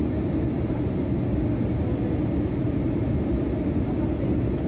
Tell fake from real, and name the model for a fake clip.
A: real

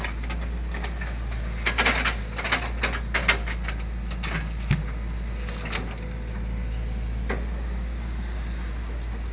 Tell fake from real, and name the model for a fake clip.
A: real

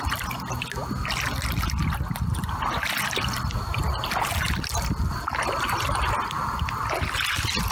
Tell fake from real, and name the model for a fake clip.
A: real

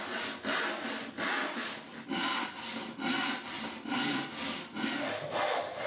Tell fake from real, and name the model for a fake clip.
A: real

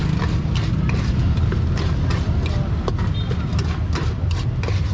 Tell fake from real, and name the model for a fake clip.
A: real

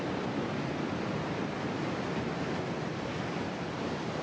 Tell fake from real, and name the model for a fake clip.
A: real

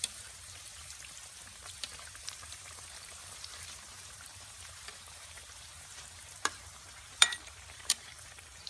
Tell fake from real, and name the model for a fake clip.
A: fake, vocoder, BigVGAN v2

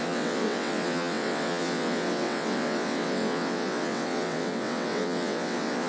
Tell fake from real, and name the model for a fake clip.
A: fake, vocoder, WaveNeXt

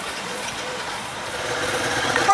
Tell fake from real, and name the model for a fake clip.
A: fake, vocoder, Vocos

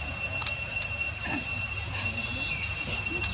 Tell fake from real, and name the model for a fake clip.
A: fake, vocoder, BigVGAN v2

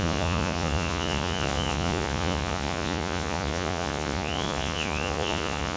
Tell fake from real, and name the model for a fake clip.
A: fake, vocoder, Vocos